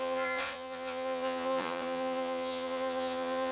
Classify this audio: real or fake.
fake